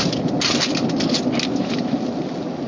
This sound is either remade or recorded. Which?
recorded